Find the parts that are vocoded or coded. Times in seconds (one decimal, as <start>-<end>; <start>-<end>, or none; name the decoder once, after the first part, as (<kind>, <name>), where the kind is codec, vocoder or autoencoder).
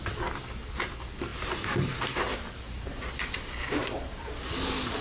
1.3-4.3 (vocoder, BigVGAN v2)